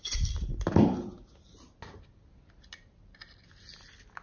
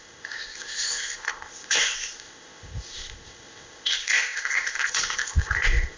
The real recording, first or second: first